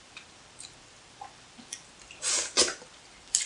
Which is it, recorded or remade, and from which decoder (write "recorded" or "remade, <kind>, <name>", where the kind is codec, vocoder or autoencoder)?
remade, vocoder, BigVGAN v2